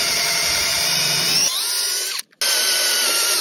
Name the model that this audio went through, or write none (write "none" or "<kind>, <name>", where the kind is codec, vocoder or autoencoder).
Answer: none